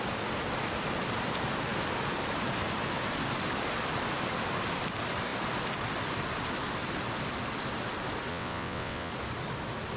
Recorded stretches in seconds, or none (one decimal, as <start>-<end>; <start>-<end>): 0.0-8.3; 9.1-10.0